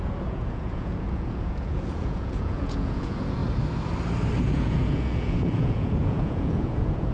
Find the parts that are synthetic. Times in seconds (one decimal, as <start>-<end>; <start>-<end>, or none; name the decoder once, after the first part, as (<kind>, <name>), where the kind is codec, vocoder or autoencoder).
0.0-3.4 (vocoder, Vocos); 4.4-7.1